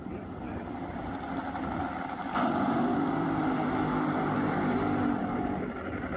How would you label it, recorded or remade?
remade